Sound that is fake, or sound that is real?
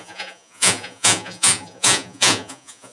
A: fake